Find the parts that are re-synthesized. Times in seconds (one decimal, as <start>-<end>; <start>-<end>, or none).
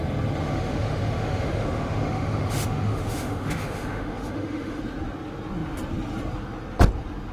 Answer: 0.4-4.8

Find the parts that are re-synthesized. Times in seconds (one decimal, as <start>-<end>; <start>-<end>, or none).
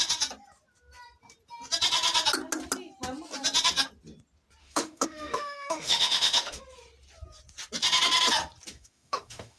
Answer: 4.6-6.6; 8.7-9.6